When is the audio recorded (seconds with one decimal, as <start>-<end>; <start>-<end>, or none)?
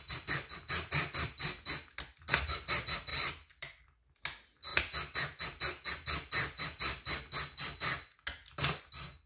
0.0-3.1; 4.2-8.4; 8.9-9.3